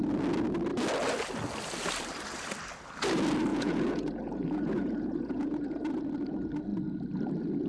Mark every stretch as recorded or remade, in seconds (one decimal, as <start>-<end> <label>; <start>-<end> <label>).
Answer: 0.0-3.5 recorded; 3.5-6.0 remade; 6.0-7.7 recorded